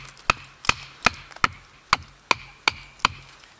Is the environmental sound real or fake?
real